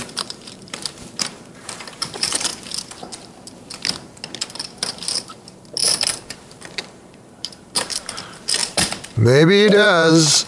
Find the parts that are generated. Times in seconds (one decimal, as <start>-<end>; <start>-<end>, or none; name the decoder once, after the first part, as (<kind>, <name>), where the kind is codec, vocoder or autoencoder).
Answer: 0.0-2.5 (vocoder, BigVGAN v2); 4.9-10.5